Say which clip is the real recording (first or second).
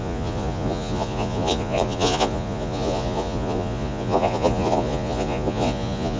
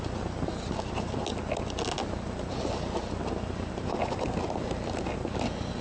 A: second